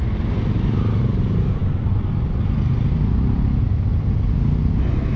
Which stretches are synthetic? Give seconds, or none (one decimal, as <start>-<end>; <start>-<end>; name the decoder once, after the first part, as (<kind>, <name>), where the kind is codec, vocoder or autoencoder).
none